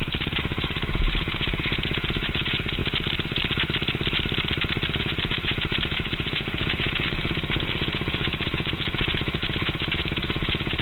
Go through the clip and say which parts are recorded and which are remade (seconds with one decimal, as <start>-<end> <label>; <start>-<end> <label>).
0.0-2.8 remade; 2.8-5.0 recorded; 5.0-10.8 remade